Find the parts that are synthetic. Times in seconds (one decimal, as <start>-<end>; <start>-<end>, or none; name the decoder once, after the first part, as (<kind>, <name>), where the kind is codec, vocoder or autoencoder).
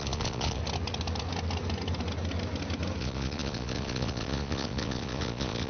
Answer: 0.0-0.6 (vocoder, Vocos); 3.0-5.7